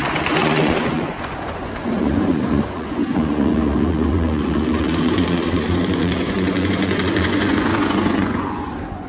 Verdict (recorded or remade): remade